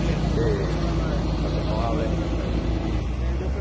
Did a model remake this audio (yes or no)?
no